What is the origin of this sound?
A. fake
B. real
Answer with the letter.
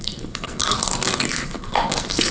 A